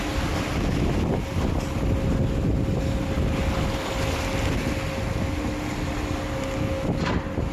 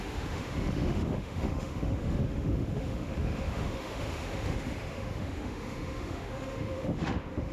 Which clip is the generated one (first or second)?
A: second